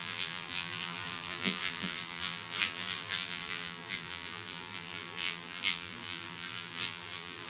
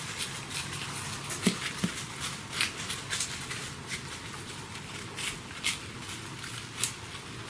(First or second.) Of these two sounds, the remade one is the first